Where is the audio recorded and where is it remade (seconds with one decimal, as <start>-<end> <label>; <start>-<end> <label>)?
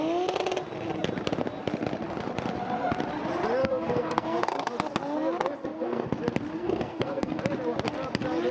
0.0-3.6 recorded; 3.6-4.7 remade; 4.7-5.6 recorded; 5.6-6.1 remade; 6.1-6.6 recorded; 6.6-7.4 remade; 7.4-8.5 recorded